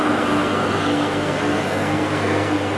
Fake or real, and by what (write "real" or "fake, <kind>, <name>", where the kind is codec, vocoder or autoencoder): fake, codec, SNAC